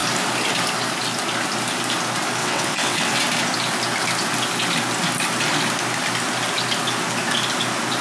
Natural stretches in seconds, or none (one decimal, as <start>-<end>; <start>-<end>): 0.0-2.4; 3.2-8.0